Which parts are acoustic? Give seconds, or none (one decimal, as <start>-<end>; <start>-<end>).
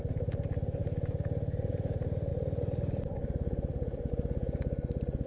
0.0-5.3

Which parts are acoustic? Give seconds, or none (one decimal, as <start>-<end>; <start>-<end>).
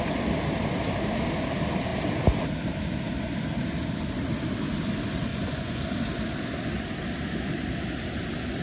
0.0-5.3; 5.8-8.6